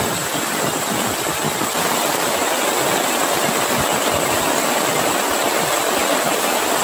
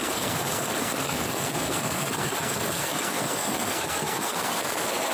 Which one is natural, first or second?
first